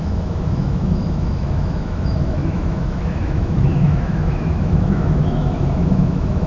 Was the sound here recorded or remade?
remade